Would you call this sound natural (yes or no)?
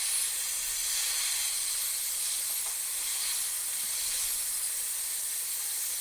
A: yes